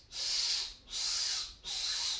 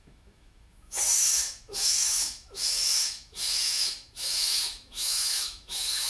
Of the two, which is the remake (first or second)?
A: second